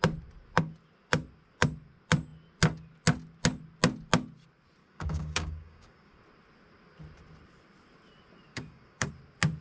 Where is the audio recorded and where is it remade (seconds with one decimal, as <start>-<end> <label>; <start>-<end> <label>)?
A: 0.0-4.8 recorded; 4.8-6.2 remade; 6.2-8.5 recorded; 8.5-9.1 remade; 9.1-9.6 recorded